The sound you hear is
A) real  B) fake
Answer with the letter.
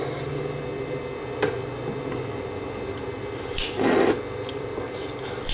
A